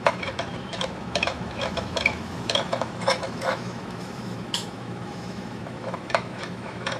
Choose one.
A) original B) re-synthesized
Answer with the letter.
B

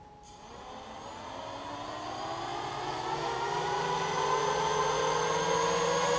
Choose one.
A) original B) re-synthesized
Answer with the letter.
A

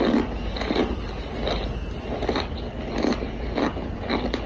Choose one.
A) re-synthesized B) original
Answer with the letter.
B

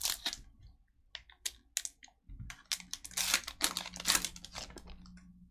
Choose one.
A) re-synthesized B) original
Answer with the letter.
B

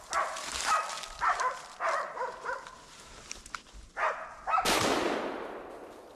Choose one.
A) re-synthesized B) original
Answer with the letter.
B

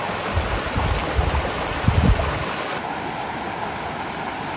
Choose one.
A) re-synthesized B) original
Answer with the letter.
B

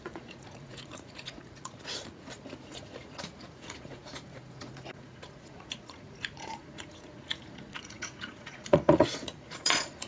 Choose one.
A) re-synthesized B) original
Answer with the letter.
A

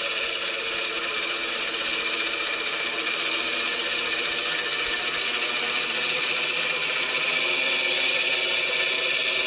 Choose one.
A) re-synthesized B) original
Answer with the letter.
B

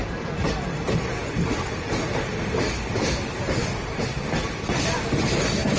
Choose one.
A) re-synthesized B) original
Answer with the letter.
B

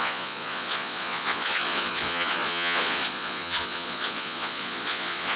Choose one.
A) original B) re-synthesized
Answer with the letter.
B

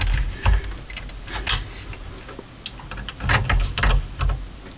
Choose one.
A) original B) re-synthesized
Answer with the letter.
A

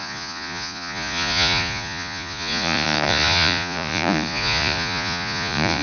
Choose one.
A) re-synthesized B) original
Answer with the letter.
A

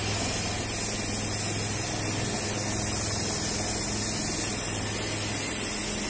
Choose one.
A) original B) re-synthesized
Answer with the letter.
A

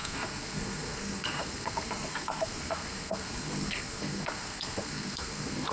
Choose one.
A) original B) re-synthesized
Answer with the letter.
B